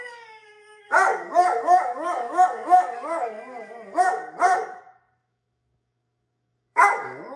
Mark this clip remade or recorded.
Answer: remade